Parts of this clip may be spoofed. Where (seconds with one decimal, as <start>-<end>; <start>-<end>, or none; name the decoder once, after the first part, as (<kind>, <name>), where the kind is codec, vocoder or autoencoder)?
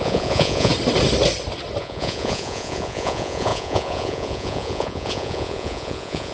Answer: 0.0-0.7 (vocoder, Vocos); 1.8-6.3